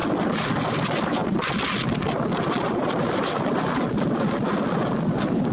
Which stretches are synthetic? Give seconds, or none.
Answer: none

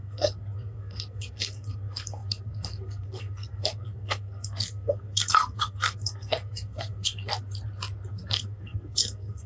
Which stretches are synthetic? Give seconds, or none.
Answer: 0.0-7.3 (codec, SNAC); 8.1-9.5

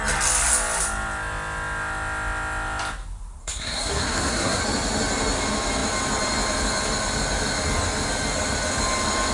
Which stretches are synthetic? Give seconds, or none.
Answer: 3.4-4.6 (codec, SNAC)

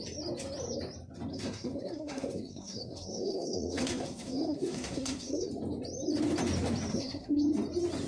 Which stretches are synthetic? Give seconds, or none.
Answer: 1.3-5.5 (codec, SNAC); 6.9-7.4

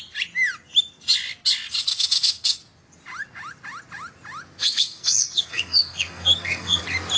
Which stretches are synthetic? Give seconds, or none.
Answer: 1.8-2.6 (codec, SNAC); 4.6-6.8

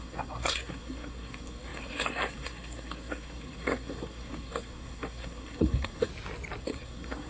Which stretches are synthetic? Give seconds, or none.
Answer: 0.0-6.1 (codec, SNAC); 6.6-7.3

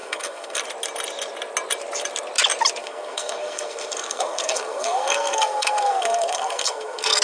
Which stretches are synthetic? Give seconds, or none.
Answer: 0.0-0.6 (codec, SNAC); 2.8-7.2

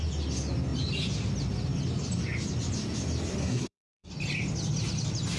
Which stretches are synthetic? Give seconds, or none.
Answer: 3.4-4.1 (codec, SNAC)